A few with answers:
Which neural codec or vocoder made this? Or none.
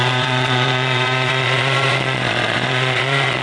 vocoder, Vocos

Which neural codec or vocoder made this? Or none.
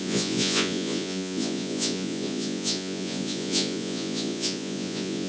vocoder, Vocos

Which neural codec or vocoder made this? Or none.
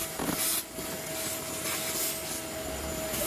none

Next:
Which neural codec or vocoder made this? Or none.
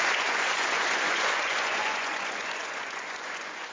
vocoder, Vocos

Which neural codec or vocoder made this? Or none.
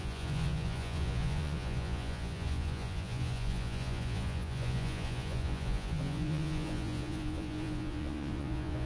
vocoder, Vocos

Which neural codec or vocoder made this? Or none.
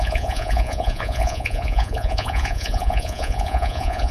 vocoder, Vocos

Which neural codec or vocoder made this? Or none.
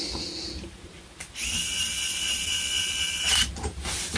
none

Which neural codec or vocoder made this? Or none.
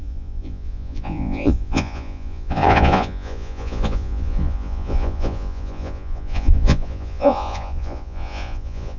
vocoder, Vocos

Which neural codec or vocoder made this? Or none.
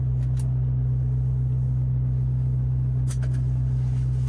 none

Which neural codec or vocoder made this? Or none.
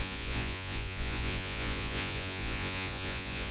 vocoder, Vocos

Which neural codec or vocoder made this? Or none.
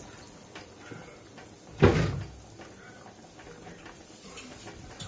none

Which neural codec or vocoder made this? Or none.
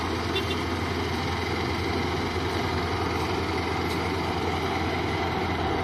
none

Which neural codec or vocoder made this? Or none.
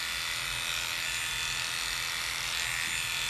none